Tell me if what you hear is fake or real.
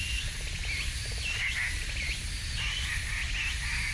real